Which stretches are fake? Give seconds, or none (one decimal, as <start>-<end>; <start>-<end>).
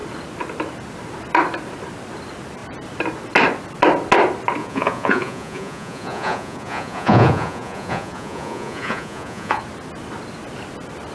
4.6-9.6